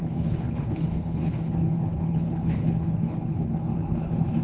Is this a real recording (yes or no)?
no